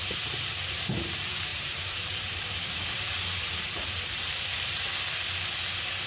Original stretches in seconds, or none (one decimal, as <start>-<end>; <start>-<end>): 0.0-1.5; 4.9-6.1

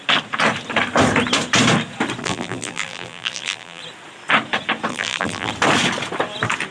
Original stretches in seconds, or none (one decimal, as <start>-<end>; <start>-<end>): 0.0-2.2; 3.8-4.9; 5.5-6.7

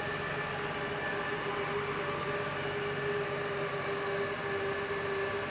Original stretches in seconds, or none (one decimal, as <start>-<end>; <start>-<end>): 0.0-5.5

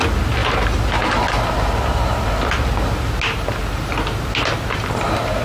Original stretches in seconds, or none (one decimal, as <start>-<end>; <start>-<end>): 0.0-5.4

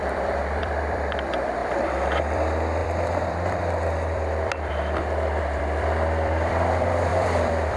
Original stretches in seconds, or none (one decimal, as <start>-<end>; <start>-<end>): none